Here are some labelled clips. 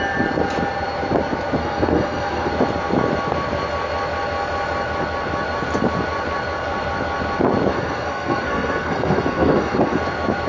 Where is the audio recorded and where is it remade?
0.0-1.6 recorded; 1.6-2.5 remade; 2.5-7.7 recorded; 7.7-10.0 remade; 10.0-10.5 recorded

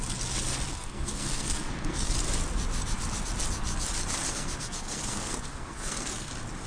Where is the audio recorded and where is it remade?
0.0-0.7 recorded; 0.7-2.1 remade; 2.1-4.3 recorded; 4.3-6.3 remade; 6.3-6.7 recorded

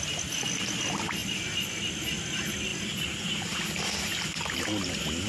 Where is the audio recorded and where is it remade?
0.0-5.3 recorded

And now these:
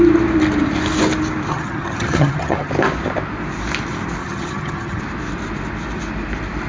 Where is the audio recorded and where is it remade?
0.0-1.5 recorded; 1.5-2.7 remade; 2.7-4.2 recorded; 4.2-5.0 remade; 5.0-6.7 recorded

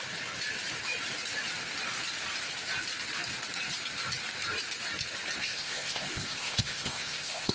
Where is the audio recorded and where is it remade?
0.0-5.4 recorded; 5.4-7.5 remade

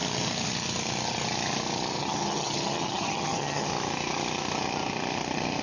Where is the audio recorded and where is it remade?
0.0-2.0 recorded; 2.0-3.7 remade; 3.7-5.6 recorded